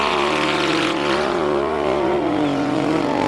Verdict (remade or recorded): remade